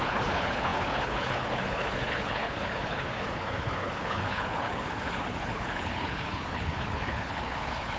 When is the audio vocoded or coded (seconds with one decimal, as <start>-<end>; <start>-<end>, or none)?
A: 0.0-8.0